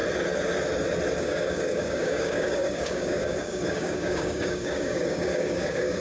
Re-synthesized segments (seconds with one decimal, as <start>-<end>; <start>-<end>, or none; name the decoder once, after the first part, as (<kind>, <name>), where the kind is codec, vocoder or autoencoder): 1.2-6.0 (codec, DAC)

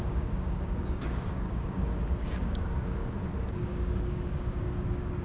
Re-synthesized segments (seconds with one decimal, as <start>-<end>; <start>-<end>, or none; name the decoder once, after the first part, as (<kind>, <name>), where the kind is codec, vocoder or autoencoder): 0.0-3.0 (codec, DAC); 3.5-5.2

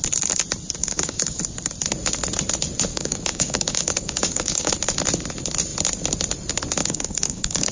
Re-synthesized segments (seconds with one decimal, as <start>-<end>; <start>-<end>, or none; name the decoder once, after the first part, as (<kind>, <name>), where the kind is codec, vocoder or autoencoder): 0.8-1.4 (codec, DAC); 2.9-4.7; 6.8-7.7